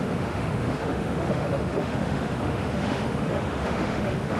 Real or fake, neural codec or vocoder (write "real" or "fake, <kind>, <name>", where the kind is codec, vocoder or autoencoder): fake, autoencoder, DAC-VAE